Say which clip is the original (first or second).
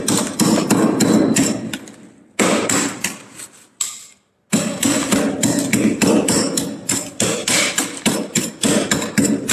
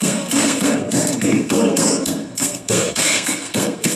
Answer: first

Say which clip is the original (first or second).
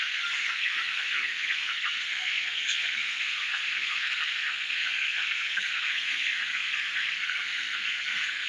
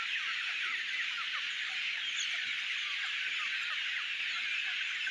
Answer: second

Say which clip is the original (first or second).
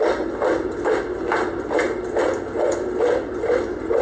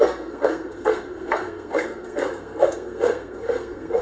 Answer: first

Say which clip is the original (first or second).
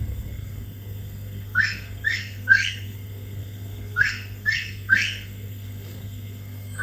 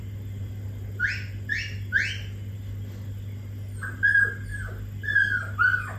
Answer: second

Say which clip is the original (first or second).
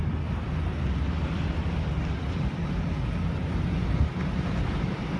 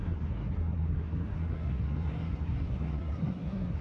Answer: first